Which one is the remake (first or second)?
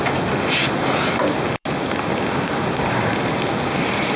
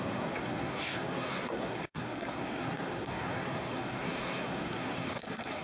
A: second